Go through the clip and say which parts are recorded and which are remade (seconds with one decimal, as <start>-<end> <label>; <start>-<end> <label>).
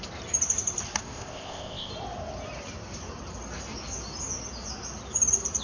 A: 0.0-1.0 recorded; 1.0-1.9 remade; 1.9-5.6 recorded